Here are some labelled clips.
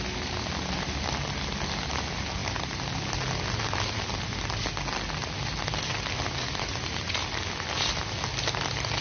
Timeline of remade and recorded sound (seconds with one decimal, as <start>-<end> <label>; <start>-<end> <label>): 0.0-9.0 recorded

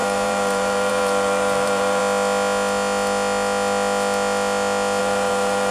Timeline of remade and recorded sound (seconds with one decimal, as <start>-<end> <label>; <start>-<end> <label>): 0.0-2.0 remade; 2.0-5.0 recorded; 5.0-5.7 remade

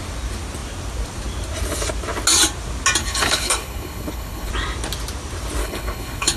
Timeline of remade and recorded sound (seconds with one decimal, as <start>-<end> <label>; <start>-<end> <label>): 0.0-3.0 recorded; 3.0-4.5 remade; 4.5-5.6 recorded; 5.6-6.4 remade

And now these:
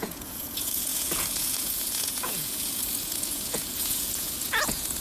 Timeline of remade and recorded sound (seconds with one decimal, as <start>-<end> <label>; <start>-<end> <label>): 0.0-5.0 remade